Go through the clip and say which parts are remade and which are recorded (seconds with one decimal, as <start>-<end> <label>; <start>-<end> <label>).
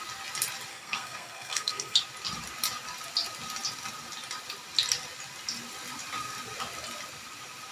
0.0-0.7 recorded; 0.7-2.0 remade; 2.0-7.7 recorded